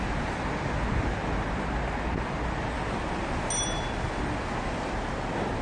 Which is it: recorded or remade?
recorded